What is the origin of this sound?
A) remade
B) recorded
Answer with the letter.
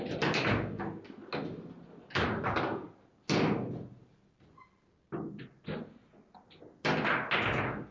B